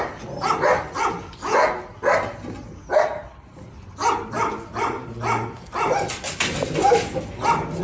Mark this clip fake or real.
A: real